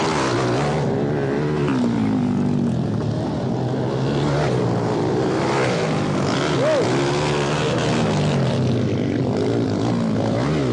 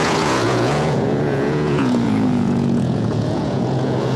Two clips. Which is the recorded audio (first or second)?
first